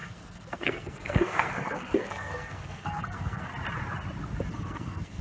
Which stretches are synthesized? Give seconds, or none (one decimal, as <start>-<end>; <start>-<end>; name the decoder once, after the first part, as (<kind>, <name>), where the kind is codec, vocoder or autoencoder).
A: 0.0-3.5 (codec, SNAC); 4.5-5.2